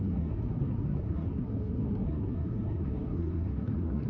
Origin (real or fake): fake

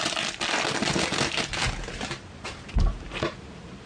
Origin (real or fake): real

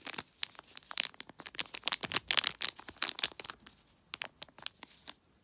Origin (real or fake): real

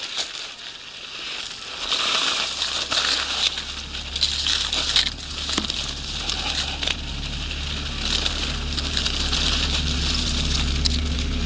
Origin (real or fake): real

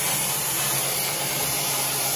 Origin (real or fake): fake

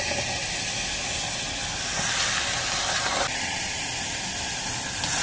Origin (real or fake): real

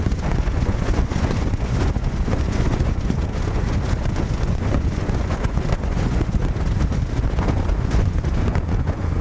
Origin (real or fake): fake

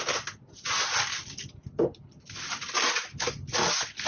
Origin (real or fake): real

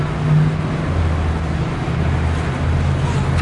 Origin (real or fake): real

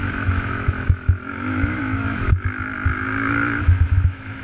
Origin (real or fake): fake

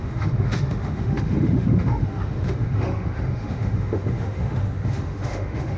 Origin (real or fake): fake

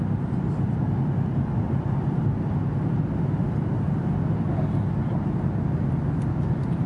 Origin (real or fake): real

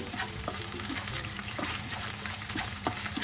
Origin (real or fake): fake